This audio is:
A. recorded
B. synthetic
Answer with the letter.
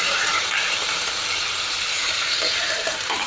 B